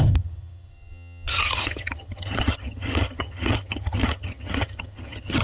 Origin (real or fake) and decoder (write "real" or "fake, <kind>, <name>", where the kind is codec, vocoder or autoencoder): fake, vocoder, HiFi-GAN